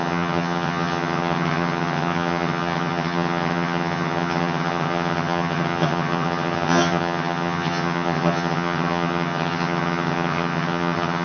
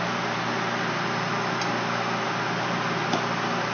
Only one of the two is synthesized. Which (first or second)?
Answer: first